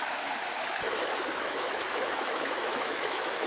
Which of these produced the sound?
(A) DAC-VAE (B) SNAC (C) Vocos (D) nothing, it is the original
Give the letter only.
A